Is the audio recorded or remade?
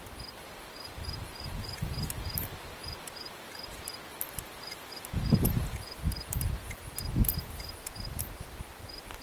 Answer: remade